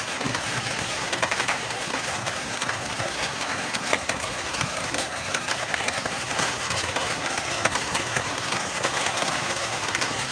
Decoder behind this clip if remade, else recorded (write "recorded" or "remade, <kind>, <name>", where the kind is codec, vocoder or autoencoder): remade, codec, SNAC